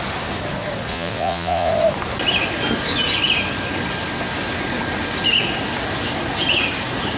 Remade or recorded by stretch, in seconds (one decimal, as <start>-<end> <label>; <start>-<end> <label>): 0.0-0.9 recorded; 0.9-1.7 remade; 1.7-7.2 recorded